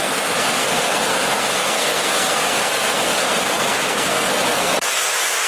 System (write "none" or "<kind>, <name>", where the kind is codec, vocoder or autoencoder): codec, SNAC